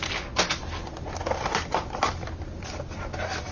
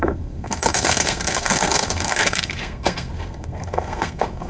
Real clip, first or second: first